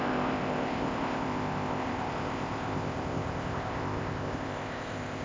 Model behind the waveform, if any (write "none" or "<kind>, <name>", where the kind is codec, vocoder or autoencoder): codec, ZipCodec